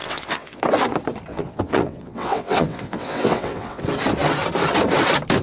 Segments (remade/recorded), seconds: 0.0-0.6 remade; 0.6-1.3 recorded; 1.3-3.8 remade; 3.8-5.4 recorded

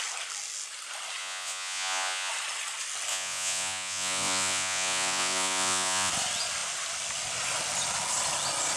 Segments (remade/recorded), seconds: 0.0-1.2 recorded; 1.2-2.3 remade; 2.3-3.1 recorded; 3.1-6.1 remade; 6.1-8.8 recorded

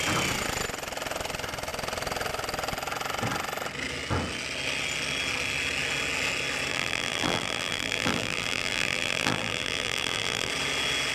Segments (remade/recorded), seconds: 0.0-6.7 recorded; 6.7-10.5 remade; 10.5-11.1 recorded

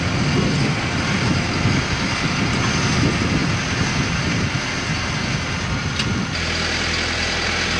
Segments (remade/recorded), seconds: 0.0-7.8 recorded

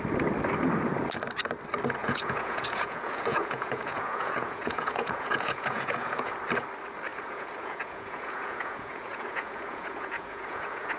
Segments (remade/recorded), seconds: 0.0-2.0 recorded; 2.0-6.3 remade; 6.3-7.1 recorded; 7.1-11.0 remade

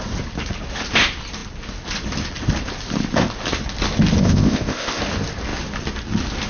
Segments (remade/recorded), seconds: 0.0-4.2 recorded; 4.2-5.0 remade; 5.0-6.5 recorded